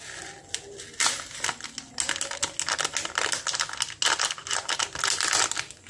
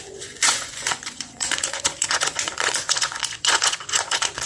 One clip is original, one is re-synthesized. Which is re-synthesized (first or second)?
second